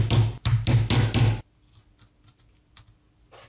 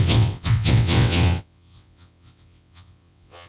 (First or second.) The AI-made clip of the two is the second